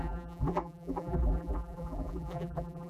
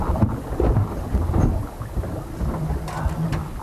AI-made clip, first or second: first